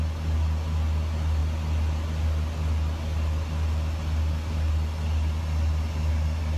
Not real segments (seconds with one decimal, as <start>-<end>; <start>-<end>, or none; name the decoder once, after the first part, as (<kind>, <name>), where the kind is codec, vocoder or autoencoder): none